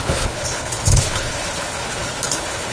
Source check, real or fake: fake